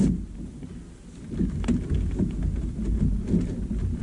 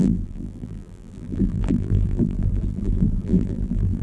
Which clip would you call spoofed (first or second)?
second